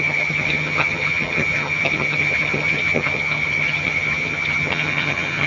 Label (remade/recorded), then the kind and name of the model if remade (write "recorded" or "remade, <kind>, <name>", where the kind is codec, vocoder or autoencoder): remade, vocoder, HiFi-GAN